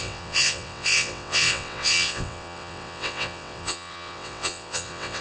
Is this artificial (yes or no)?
yes